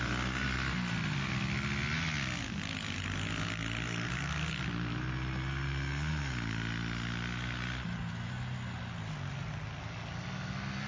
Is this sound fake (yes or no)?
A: no